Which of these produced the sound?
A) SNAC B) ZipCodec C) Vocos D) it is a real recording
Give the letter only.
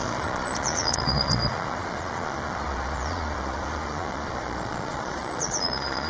C